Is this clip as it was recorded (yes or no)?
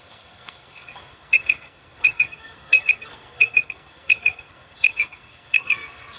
no